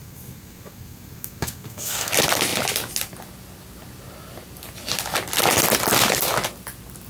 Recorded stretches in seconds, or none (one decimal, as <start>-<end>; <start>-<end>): 2.1-7.1

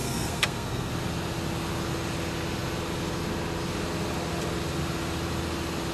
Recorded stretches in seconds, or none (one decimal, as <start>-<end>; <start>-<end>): 0.9-5.9

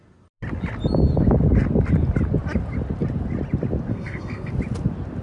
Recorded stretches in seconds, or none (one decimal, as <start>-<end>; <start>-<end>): 0.0-3.9; 4.5-5.2

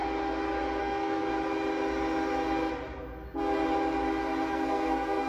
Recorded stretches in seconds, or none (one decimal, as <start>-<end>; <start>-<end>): 0.0-0.8; 1.3-4.5

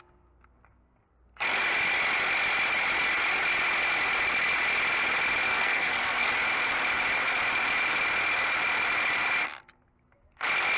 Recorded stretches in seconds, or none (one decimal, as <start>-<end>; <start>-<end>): 0.0-5.5; 6.3-10.8

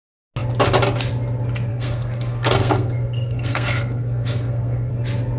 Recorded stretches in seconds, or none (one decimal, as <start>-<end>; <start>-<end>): 0.0-1.7; 4.9-5.4